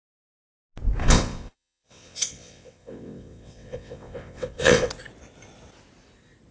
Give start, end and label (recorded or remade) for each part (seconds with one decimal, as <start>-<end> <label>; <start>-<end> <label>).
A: 0.0-1.0 recorded; 1.0-4.9 remade; 4.9-6.5 recorded